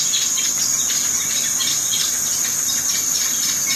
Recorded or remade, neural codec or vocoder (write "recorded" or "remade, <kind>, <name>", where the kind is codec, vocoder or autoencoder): recorded